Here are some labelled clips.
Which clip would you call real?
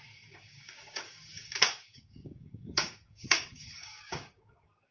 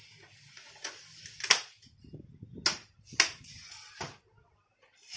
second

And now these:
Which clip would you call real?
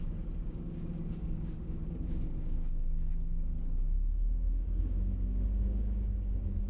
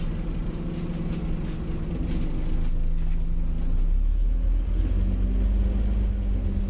second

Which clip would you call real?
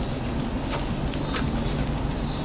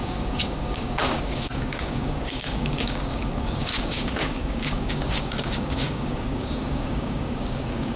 first